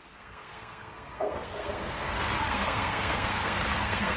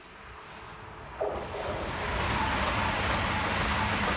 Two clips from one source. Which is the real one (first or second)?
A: second